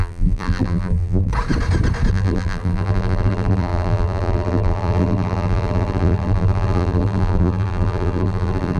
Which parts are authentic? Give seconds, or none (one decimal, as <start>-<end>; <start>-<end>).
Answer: 1.3-2.1